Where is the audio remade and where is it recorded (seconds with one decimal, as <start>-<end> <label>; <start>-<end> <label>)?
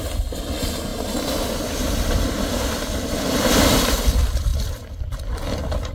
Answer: 0.0-0.9 recorded; 0.9-3.5 remade; 3.5-5.9 recorded